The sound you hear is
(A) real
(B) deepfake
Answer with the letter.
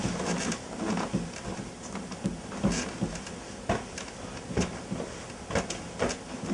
A